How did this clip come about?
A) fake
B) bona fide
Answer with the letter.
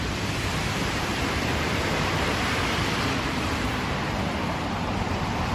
A